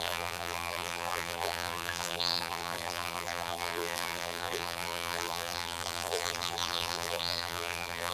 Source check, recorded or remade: remade